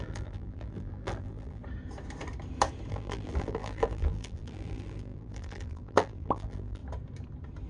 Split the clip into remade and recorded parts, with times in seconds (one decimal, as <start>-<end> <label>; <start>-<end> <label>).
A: 0.0-1.6 remade; 1.6-2.9 recorded; 2.9-6.8 remade; 6.8-7.7 recorded